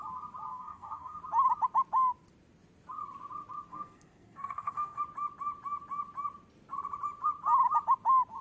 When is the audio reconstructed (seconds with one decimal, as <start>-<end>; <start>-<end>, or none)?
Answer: 0.5-1.2; 3.7-5.0